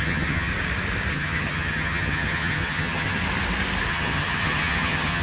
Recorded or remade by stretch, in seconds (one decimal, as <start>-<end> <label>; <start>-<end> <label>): 0.0-0.5 remade; 0.5-1.1 recorded; 1.1-3.2 remade; 3.2-3.9 recorded; 3.9-5.2 remade